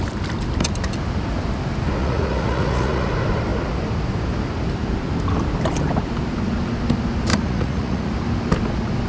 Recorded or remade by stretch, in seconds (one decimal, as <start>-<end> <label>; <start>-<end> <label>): 0.0-2.0 recorded; 2.0-3.1 remade; 3.1-7.3 recorded; 7.3-8.1 remade; 8.1-9.1 recorded